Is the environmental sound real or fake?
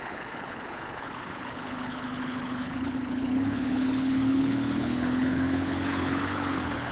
fake